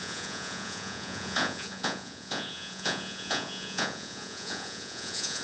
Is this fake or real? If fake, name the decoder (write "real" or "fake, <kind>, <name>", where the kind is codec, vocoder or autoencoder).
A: fake, vocoder, Vocos